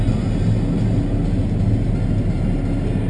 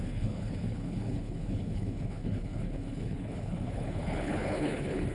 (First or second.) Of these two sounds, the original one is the first